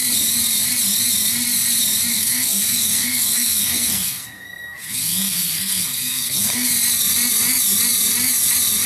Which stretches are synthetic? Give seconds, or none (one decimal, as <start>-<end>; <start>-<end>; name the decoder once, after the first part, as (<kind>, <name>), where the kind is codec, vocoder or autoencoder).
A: 2.1-6.7 (codec, SNAC)